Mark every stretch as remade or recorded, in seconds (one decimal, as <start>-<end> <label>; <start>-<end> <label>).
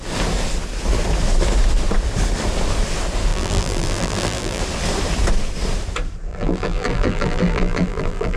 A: 0.0-3.3 recorded; 3.3-4.6 remade; 4.6-6.3 recorded; 6.3-8.4 remade